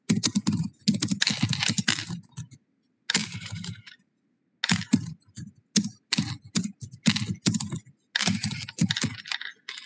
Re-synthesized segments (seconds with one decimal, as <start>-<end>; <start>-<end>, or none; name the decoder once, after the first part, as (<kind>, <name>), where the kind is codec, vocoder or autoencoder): 3.2-4.0 (vocoder, BigVGAN v2)